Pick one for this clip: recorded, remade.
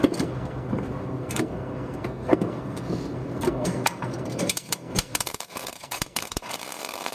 remade